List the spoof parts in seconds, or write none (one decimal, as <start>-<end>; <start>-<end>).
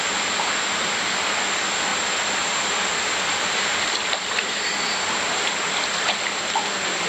1.9-6.2